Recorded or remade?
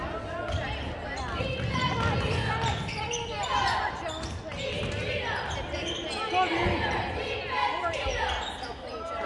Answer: recorded